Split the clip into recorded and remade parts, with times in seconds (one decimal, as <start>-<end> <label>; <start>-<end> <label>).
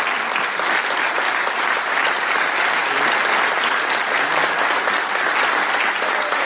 0.0-6.5 recorded